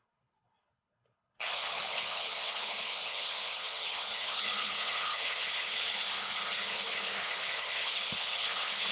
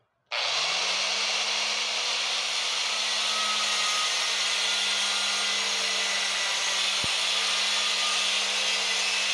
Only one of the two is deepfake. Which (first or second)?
first